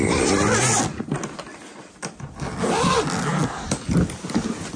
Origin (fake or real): real